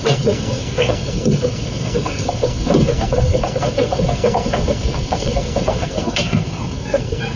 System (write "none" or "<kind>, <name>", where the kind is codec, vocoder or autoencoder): codec, SNAC